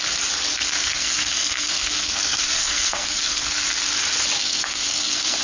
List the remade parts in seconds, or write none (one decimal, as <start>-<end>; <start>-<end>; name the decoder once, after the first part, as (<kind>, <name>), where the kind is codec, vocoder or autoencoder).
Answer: 0.5-3.7 (codec, SNAC); 4.4-5.4